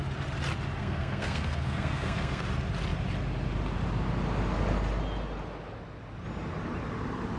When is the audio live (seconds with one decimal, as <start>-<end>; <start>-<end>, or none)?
0.0-0.8; 2.4-7.4